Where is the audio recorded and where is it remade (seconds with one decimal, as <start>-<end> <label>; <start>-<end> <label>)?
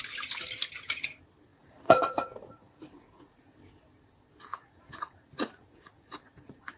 0.0-1.5 recorded; 1.5-3.5 remade; 3.5-4.5 recorded; 4.5-6.8 remade